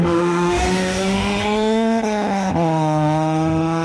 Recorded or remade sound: remade